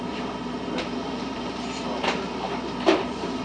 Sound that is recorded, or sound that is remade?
recorded